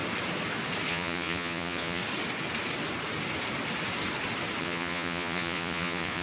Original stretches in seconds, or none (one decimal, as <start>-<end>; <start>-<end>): 0.0-0.9; 2.0-4.6